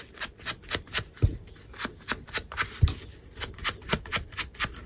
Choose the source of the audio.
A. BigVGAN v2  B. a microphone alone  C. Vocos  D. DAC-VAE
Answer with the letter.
B